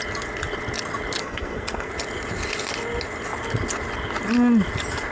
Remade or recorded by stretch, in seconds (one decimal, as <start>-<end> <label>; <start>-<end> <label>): 0.0-1.2 recorded; 1.2-1.9 remade; 1.9-5.1 recorded